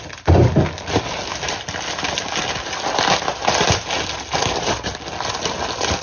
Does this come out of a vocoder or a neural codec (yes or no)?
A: no